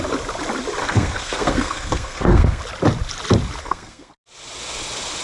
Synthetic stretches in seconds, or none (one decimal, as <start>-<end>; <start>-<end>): 0.8-2.6; 3.6-4.1